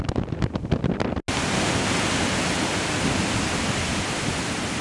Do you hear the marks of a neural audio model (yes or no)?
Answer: no